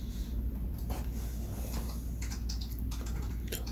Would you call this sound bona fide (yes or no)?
yes